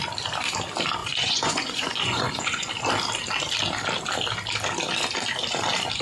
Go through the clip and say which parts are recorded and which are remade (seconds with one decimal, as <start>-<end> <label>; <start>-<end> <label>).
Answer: 0.0-1.0 recorded; 1.0-2.7 remade; 2.7-6.0 recorded